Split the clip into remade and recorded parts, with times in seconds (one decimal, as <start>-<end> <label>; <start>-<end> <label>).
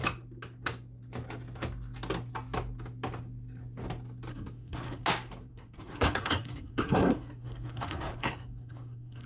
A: 0.0-4.3 recorded; 4.3-5.0 remade; 5.0-5.5 recorded; 5.5-9.3 remade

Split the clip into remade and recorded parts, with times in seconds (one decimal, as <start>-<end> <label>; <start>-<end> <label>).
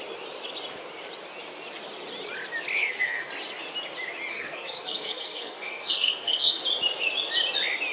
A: 0.0-2.8 recorded; 2.8-3.3 remade; 3.3-4.3 recorded; 4.3-6.6 remade; 6.6-7.9 recorded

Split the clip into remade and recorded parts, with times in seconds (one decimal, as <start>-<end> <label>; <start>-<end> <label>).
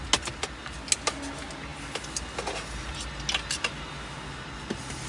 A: 0.0-5.1 recorded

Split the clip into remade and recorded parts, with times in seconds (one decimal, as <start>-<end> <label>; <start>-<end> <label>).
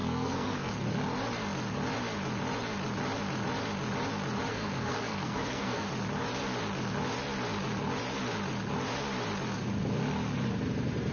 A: 0.0-0.7 remade; 0.7-4.5 recorded; 4.5-5.9 remade; 5.9-11.1 recorded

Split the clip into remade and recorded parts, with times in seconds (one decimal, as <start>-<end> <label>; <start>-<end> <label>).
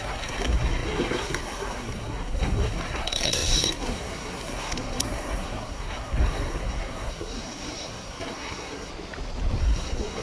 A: 0.0-8.9 remade; 8.9-9.6 recorded; 9.6-10.2 remade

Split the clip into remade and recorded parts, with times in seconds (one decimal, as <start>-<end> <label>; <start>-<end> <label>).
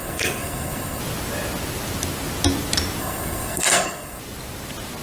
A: 0.0-1.0 remade; 1.0-3.0 recorded; 3.0-4.2 remade; 4.2-5.0 recorded